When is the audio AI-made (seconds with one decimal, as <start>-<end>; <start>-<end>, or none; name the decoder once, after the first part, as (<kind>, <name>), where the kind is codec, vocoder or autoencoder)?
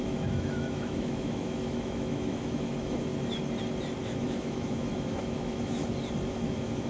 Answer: 0.0-3.1 (autoencoder, DAC-VAE); 4.0-5.8; 6.3-6.9